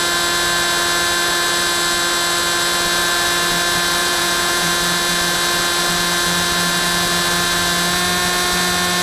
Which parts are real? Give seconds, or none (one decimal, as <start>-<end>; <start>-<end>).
0.0-4.0; 4.7-9.0